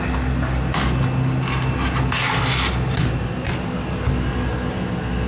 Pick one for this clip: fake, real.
real